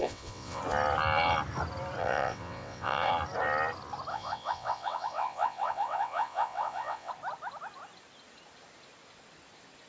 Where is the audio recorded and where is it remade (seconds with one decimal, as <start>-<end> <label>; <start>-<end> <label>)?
0.0-0.6 remade; 0.6-2.0 recorded; 2.0-3.1 remade; 3.1-4.1 recorded; 4.1-7.1 remade; 7.1-9.9 recorded